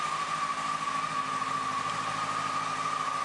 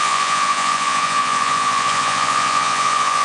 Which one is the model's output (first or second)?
second